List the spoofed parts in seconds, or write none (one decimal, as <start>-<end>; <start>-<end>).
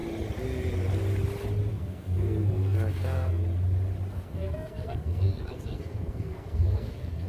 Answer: 1.7-3.4; 4.1-7.3